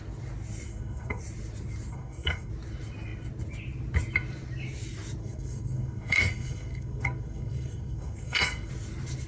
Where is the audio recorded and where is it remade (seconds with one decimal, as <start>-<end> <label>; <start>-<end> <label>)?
0.0-0.7 recorded; 0.7-1.2 remade; 1.2-1.9 recorded; 1.9-2.5 remade; 2.5-5.2 recorded; 5.2-8.7 remade; 8.7-9.3 recorded